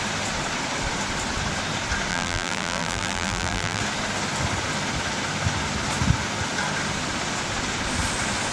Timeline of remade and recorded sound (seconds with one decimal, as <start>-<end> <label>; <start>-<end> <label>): 0.0-2.1 recorded; 2.1-3.8 remade; 3.8-8.5 recorded